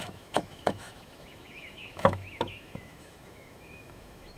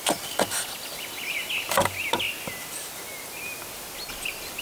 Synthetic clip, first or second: first